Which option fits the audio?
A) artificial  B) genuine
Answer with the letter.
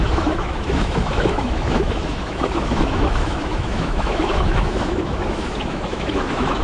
A